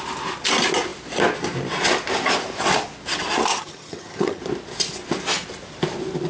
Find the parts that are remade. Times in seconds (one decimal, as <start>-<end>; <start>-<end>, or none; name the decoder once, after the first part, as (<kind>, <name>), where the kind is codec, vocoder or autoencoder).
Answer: 3.5-4.4 (vocoder, HiFi-GAN)